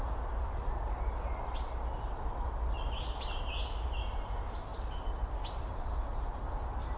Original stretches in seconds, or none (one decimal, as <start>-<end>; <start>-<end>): 0.0-7.0